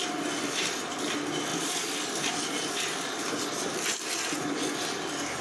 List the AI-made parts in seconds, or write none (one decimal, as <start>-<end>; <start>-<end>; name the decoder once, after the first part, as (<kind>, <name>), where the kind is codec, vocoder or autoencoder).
1.5-4.7 (vocoder, BigVGAN v2)